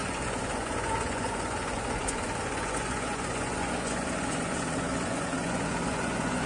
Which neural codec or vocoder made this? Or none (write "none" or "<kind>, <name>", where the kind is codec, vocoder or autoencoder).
vocoder, Vocos